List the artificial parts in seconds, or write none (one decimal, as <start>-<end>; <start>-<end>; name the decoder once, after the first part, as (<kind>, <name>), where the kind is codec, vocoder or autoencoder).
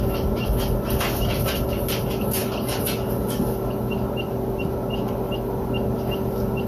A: none